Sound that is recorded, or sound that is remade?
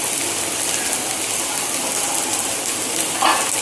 recorded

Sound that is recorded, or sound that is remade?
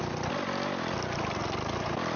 recorded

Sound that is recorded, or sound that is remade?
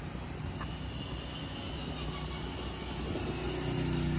recorded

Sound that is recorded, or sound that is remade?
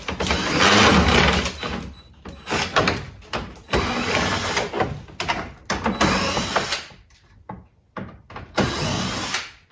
recorded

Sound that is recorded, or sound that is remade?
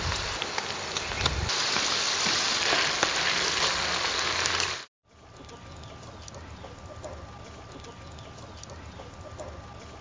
recorded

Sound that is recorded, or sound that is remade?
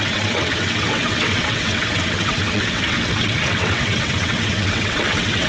remade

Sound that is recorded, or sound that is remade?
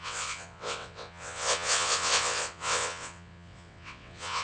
remade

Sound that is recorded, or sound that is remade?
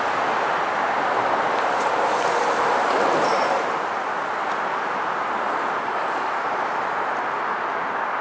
recorded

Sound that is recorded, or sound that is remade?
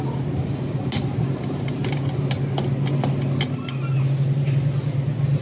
recorded